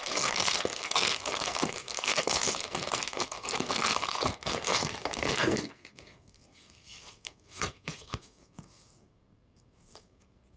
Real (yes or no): no